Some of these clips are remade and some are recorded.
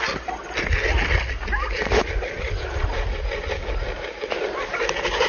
recorded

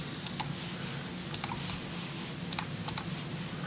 recorded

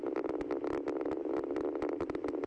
recorded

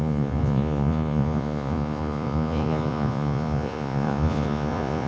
remade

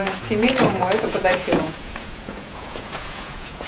remade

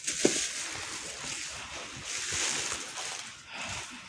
recorded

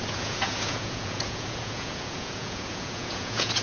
remade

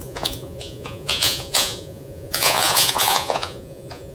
remade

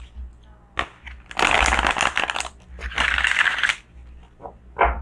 recorded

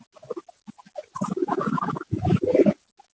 recorded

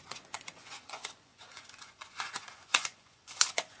remade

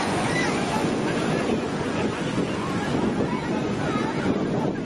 remade